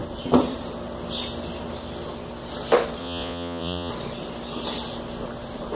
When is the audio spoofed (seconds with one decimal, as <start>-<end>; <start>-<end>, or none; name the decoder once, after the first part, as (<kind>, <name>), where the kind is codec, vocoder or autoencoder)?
3.0-3.9 (vocoder, Vocos)